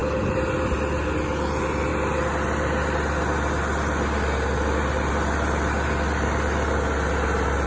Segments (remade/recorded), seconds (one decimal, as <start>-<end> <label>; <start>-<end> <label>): 0.0-7.7 recorded